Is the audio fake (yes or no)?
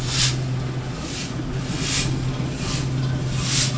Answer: no